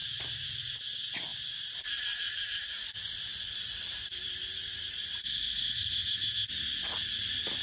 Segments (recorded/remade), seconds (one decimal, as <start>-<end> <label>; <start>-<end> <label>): 0.0-0.8 remade; 0.8-1.3 recorded; 1.3-5.9 remade; 5.9-7.6 recorded